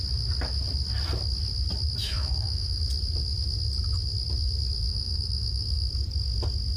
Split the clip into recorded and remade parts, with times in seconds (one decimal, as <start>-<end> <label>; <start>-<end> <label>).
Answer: 0.0-2.0 recorded; 2.0-2.8 remade; 2.8-4.9 recorded; 4.9-5.9 remade; 5.9-6.8 recorded